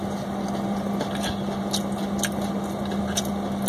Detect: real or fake real